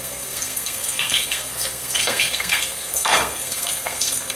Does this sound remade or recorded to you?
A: remade